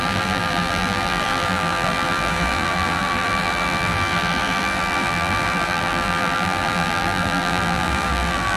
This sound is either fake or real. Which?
fake